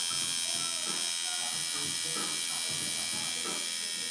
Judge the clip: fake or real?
real